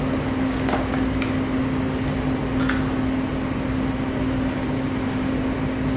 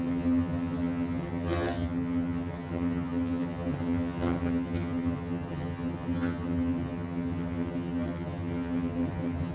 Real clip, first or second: first